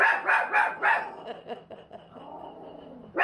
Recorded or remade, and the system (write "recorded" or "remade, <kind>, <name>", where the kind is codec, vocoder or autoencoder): recorded